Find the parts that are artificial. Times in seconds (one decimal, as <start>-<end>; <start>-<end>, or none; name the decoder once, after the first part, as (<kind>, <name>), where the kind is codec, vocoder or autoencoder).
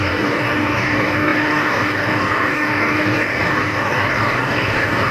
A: 0.0-5.1 (codec, DAC)